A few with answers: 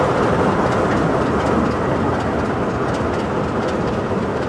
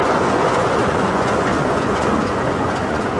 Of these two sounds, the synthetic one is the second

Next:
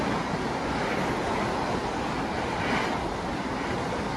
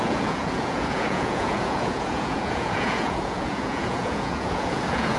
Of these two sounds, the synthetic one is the second